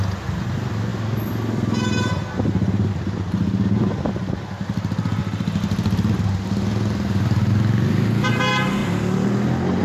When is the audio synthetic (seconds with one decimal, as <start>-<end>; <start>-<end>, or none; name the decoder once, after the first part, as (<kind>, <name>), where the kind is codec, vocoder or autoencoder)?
none